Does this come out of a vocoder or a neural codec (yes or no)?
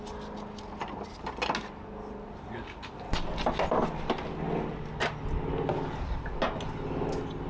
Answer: no